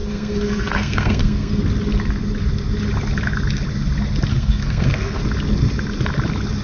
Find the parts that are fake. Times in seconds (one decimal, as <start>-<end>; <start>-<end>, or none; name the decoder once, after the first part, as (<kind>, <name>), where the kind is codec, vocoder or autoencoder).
0.0-1.6 (codec, SNAC); 4.3-5.2